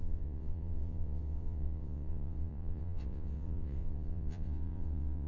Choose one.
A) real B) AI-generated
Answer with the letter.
B